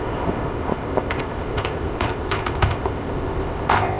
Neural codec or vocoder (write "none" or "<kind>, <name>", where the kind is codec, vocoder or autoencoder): codec, ZipCodec